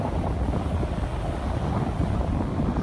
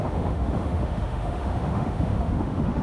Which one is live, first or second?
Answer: first